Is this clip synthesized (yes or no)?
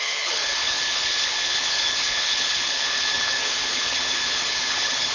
yes